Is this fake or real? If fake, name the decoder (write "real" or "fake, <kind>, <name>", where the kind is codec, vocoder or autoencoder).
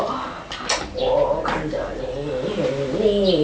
real